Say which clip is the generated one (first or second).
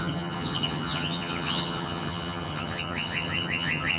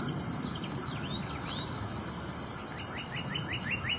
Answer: first